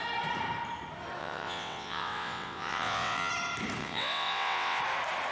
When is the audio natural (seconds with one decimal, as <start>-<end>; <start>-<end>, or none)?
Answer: 0.0-1.2; 3.3-3.8; 4.8-5.3